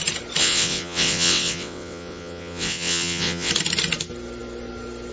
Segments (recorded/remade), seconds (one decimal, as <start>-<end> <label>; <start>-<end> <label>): 0.0-0.4 recorded; 0.4-3.5 remade; 3.5-5.1 recorded